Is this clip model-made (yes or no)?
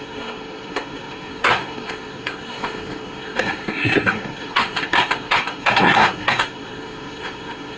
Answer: yes